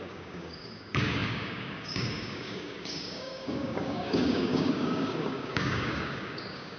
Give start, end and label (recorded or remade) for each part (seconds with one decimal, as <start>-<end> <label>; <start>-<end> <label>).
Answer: 0.0-6.8 remade